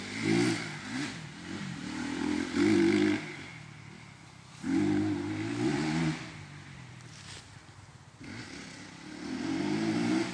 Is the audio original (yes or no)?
yes